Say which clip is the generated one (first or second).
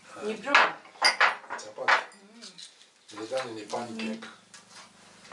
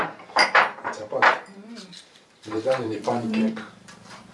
second